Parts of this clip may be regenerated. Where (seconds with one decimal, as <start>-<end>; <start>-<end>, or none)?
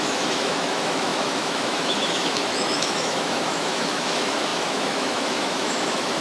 0.0-6.2